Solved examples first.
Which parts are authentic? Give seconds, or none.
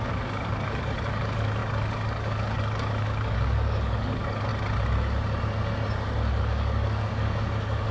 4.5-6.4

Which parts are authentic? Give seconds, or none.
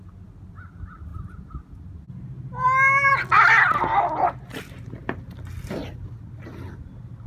0.0-7.3